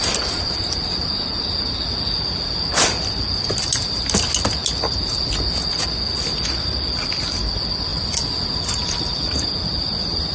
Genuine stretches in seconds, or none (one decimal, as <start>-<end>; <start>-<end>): 0.0-4.6; 5.3-7.9; 9.7-10.3